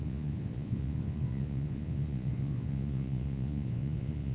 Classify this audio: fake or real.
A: fake